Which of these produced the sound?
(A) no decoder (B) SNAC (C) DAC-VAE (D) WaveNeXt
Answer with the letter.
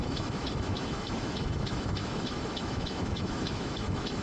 C